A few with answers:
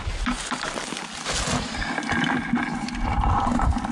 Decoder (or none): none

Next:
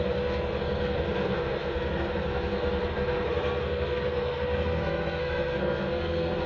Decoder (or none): codec, SNAC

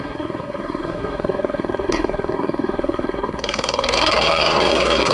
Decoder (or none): codec, SNAC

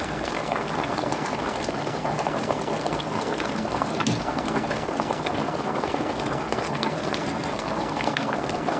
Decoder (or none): codec, SNAC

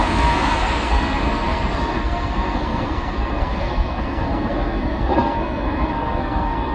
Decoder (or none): codec, SNAC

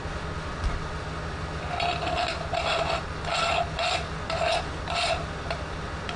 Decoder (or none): none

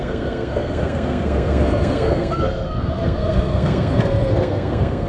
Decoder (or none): codec, SNAC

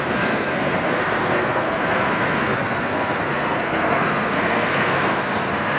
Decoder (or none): codec, SNAC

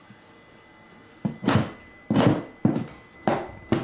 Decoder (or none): none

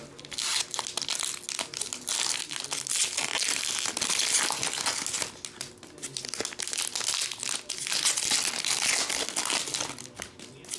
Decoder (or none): none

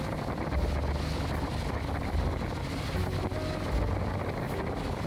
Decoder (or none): none